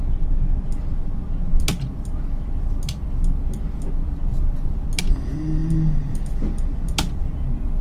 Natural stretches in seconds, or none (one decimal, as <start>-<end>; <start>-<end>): 0.0-7.8